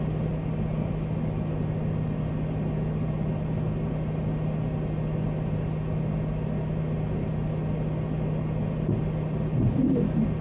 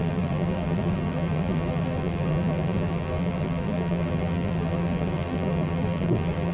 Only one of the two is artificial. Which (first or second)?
second